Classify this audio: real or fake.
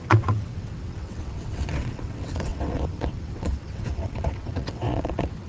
fake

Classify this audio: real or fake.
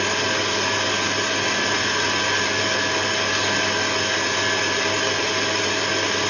real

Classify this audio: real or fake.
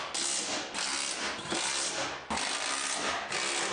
real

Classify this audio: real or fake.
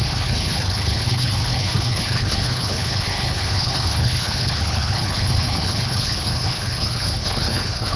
fake